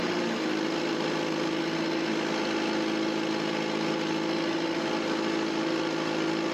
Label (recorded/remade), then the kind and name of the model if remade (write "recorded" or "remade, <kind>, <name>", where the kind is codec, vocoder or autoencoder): recorded